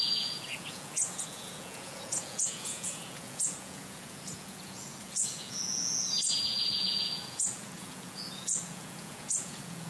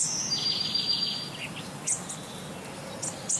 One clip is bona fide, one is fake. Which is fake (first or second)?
first